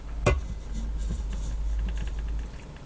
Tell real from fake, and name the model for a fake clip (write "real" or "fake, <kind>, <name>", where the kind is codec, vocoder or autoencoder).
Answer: real